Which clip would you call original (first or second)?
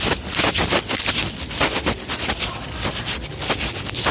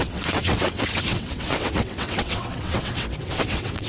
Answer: first